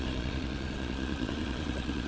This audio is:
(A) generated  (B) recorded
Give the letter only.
A